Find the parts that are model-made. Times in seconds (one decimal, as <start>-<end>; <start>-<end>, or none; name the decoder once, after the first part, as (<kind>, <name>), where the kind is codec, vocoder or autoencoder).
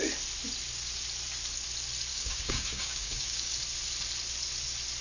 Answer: 2.1-3.5 (codec, DAC)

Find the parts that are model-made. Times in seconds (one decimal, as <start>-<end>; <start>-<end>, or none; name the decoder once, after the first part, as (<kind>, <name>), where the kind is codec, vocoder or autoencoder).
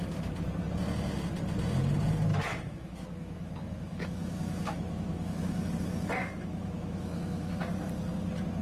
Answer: 2.3-5.7 (autoencoder, DAC-VAE); 6.2-7.6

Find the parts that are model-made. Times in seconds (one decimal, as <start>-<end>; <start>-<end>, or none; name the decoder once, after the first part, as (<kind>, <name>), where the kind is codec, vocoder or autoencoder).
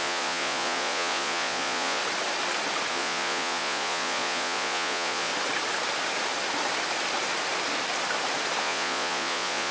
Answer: 0.0-2.0 (vocoder, Vocos); 2.9-5.3; 8.6-9.7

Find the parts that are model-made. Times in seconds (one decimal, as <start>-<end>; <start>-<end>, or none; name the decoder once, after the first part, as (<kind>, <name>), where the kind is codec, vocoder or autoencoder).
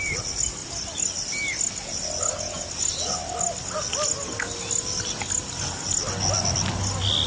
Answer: none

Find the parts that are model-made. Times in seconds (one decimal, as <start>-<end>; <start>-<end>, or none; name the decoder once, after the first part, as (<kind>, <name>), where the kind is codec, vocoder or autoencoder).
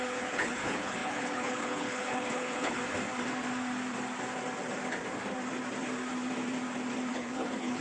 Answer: 0.0-2.8 (codec, HILCodec); 7.1-7.8